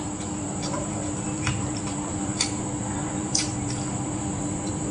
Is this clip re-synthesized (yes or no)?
yes